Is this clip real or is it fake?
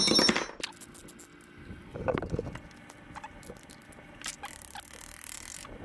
real